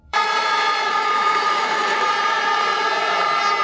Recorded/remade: remade